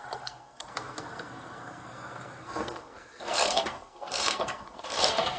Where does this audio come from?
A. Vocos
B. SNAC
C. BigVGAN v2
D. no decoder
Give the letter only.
B